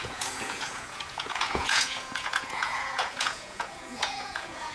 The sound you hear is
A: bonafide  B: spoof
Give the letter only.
B